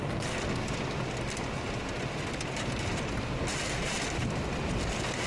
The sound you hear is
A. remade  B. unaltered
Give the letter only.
B